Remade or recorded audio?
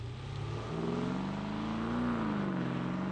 recorded